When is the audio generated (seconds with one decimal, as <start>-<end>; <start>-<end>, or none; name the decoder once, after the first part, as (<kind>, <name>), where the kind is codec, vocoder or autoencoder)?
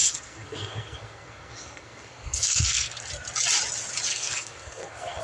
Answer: 0.0-3.1 (codec, SNAC); 4.1-5.2